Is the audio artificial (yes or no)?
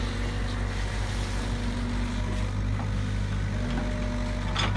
no